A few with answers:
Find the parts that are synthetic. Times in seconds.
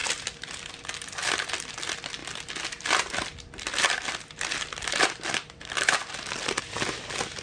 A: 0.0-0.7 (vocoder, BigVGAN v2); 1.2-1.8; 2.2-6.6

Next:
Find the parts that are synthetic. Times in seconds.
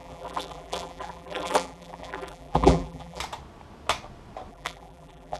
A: 0.0-3.2 (vocoder, BigVGAN v2); 4.5-5.4